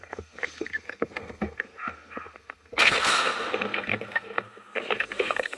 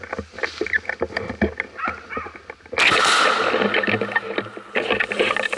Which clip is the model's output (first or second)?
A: first